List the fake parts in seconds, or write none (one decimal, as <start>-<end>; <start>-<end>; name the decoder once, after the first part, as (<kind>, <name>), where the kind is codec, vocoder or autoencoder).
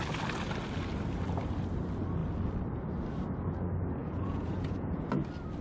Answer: 4.0-5.1 (vocoder, Vocos)